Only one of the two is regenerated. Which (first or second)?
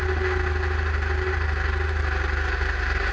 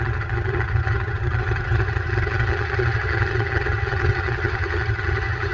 second